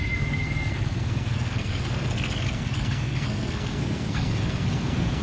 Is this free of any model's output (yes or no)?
no